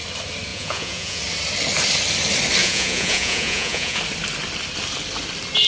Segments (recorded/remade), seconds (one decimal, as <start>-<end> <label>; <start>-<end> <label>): 0.0-0.5 recorded; 0.5-1.2 remade; 1.2-2.6 recorded; 2.6-4.0 remade; 4.0-5.7 recorded